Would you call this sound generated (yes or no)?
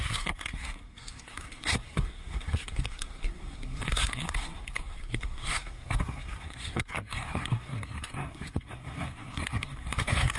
yes